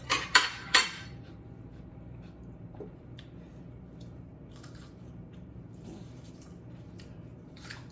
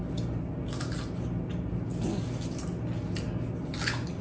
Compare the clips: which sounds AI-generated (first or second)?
first